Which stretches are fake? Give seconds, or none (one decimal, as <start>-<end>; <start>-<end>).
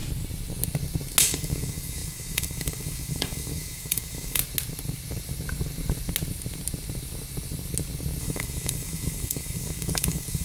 1.2-4.4; 8.2-10.4